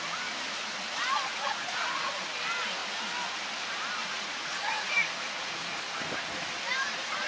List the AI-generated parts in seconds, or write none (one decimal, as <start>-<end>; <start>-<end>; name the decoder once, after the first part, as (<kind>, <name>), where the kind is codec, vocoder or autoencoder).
1.3-2.1 (vocoder, Vocos); 4.0-5.8

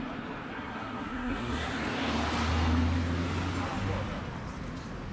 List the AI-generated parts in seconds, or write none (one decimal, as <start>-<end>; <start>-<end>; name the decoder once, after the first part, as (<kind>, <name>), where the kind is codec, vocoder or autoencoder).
0.5-1.7 (codec, SNAC)

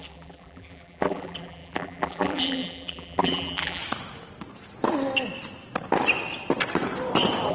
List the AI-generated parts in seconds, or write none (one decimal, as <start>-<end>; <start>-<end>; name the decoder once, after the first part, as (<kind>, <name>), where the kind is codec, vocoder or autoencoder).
0.0-3.8 (vocoder, BigVGAN v2)

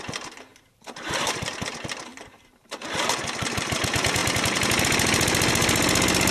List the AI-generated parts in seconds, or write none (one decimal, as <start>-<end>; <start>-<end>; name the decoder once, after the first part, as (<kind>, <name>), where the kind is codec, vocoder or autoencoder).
0.5-1.5 (vocoder, BigVGAN v2); 2.1-3.8